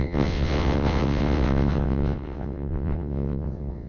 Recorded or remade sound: remade